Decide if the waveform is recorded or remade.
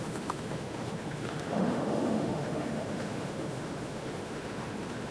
remade